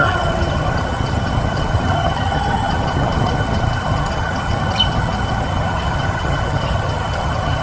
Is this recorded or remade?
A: remade